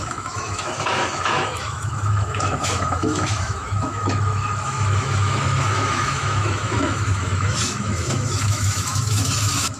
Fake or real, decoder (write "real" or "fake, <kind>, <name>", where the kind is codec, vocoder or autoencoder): fake, autoencoder, DAC-VAE